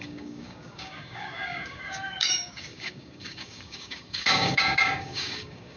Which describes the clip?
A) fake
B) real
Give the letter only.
A